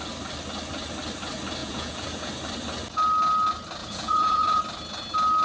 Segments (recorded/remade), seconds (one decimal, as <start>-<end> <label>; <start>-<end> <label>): 0.0-1.6 recorded; 1.6-2.3 remade; 2.3-3.8 recorded; 3.8-4.6 remade; 4.6-5.4 recorded